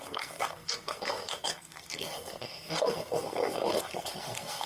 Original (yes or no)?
no